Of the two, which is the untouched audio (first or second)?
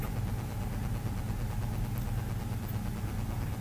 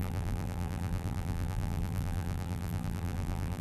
first